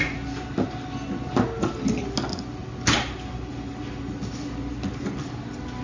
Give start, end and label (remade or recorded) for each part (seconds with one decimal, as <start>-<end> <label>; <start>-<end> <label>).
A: 0.0-5.8 recorded